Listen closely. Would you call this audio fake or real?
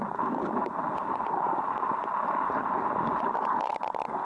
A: real